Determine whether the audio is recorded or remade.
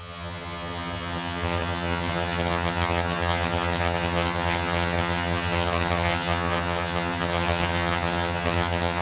remade